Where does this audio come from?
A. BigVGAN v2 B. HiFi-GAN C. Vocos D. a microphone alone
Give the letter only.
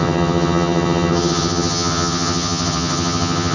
B